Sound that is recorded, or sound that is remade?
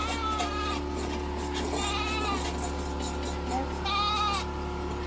recorded